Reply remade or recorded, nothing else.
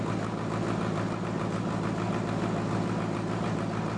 recorded